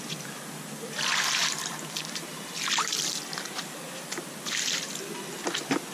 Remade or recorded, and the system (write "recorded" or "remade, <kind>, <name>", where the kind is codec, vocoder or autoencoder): recorded